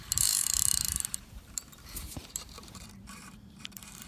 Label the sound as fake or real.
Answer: fake